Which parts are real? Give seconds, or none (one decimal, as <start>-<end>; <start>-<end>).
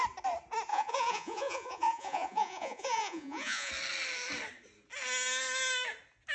0.0-0.7; 3.7-6.3